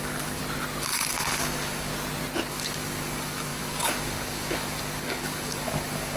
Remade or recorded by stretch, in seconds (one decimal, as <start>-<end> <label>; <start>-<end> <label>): 0.0-0.4 remade; 0.4-1.1 recorded; 1.1-1.9 remade; 1.9-2.5 recorded; 2.5-6.2 remade